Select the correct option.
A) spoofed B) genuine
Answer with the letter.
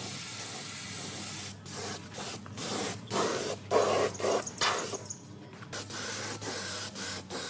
B